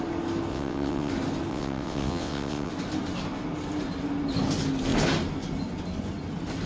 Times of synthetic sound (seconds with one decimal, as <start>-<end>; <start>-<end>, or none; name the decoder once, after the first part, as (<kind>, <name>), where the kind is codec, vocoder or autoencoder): 0.5-1.1 (vocoder, WaveNeXt); 1.5-2.7